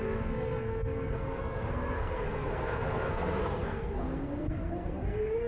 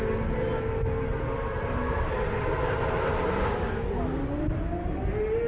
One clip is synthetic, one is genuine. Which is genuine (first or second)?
second